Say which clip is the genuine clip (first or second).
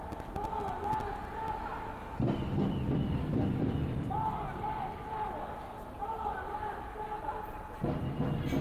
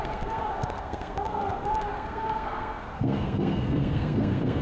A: first